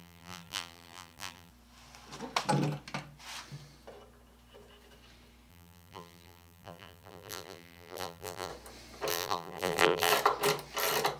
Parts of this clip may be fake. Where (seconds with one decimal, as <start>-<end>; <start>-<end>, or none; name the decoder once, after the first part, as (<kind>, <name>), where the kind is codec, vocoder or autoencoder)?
0.0-1.5 (vocoder, BigVGAN v2); 5.5-8.5; 9.1-10.1